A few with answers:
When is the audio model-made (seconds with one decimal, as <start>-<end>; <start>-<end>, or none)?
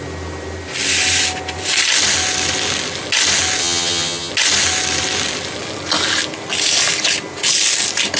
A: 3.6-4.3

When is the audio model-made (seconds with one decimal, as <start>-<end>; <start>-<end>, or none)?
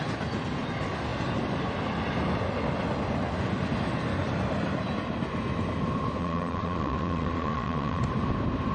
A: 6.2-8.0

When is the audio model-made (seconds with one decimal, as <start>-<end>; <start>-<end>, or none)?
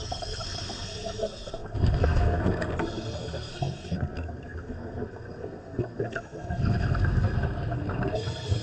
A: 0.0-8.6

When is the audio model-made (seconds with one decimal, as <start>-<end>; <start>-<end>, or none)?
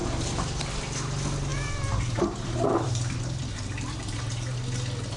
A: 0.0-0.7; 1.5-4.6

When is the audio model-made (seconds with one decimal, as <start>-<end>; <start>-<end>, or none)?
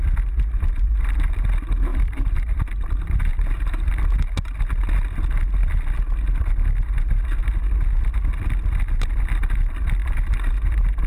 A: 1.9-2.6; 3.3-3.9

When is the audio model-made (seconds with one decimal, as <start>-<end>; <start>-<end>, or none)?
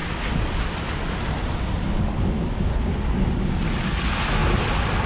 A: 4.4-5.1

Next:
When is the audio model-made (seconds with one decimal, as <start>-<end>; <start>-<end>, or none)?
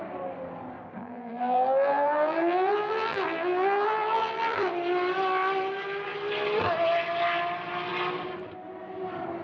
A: 1.0-4.7